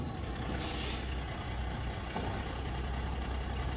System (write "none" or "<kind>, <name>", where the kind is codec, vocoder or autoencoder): none